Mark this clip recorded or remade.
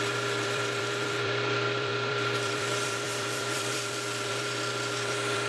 remade